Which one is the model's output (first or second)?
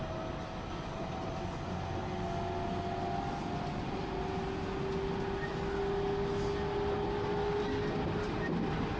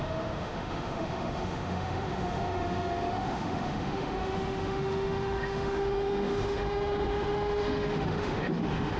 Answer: second